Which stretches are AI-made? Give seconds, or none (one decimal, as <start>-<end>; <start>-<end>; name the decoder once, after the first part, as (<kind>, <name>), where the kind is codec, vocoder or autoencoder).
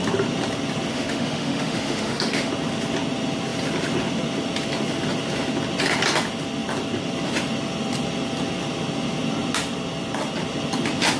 0.9-2.5 (autoencoder, DAC-VAE)